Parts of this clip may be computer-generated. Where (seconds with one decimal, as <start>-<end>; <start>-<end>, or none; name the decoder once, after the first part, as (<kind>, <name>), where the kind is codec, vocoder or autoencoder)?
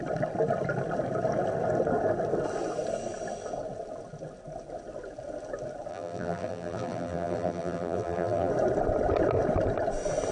5.9-8.5 (vocoder, BigVGAN v2)